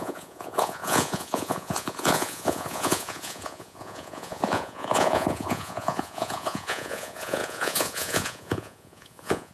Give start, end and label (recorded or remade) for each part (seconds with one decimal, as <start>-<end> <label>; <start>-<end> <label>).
0.0-9.5 remade